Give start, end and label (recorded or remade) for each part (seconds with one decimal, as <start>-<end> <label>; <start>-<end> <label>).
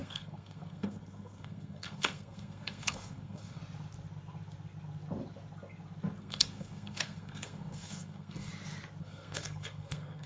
0.0-3.6 remade; 3.6-6.2 recorded; 6.2-8.5 remade; 8.5-9.0 recorded; 9.0-10.3 remade